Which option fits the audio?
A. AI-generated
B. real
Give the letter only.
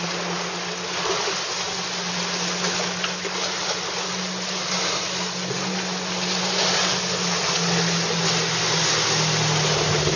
B